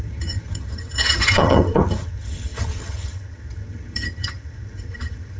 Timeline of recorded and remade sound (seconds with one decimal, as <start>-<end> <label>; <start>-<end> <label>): 0.0-5.4 remade